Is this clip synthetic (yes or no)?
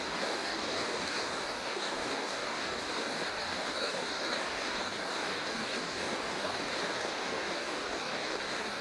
yes